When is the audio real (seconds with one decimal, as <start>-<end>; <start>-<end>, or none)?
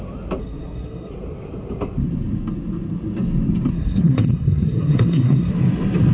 0.0-0.4; 1.1-3.7; 5.5-6.1